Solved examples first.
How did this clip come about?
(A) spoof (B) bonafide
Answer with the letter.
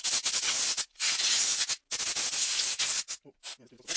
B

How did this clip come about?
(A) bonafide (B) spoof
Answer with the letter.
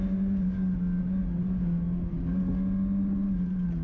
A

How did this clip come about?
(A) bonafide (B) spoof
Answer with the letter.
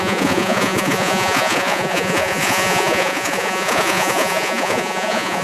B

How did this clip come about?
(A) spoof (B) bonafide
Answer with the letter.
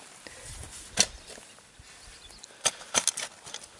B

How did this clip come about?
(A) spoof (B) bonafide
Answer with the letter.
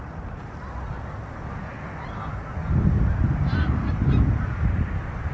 B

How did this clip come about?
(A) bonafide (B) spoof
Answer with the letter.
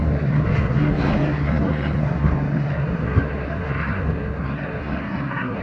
B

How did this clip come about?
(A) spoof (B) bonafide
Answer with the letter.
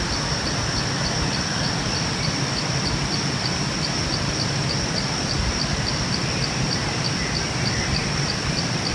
B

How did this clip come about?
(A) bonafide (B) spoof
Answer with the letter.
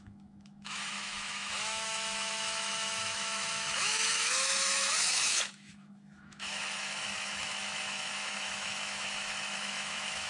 B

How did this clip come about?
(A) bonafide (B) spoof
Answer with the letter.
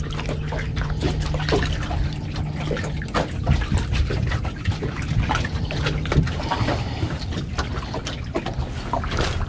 A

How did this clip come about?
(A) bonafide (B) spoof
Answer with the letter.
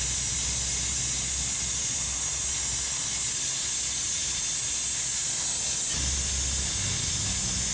A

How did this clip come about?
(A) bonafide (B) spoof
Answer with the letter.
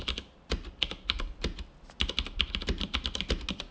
A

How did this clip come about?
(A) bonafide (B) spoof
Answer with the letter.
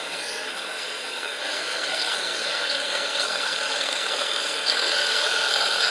B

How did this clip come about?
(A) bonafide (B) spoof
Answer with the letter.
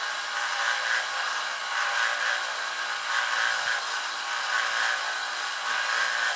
B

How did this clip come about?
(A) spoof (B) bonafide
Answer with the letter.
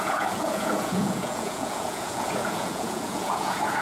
A